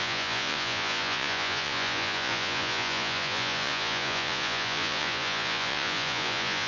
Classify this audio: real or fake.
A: fake